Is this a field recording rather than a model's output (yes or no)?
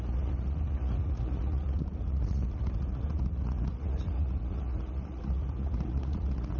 no